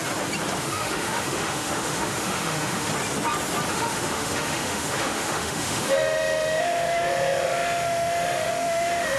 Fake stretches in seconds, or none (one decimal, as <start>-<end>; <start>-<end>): 0.6-2.9; 3.7-9.2